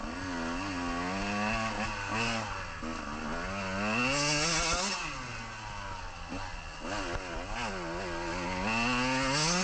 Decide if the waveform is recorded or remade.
recorded